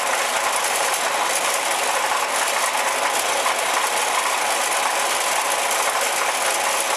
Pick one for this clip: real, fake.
real